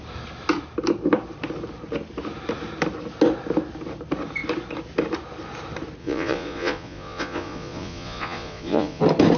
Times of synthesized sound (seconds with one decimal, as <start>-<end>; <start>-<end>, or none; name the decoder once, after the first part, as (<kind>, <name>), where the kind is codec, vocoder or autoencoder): 6.0-9.0 (vocoder, Vocos)